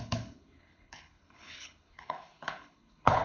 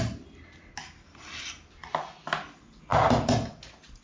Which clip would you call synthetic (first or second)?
first